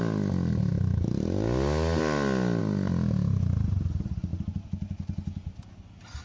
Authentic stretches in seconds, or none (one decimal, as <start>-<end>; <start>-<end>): 0.0-6.2